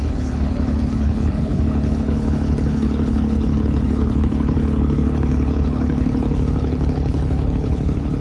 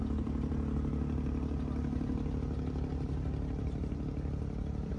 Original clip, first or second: second